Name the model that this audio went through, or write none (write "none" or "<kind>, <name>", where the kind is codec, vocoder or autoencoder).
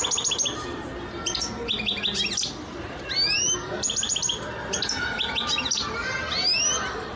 none